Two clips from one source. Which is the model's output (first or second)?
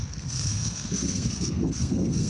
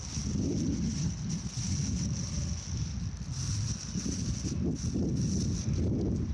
first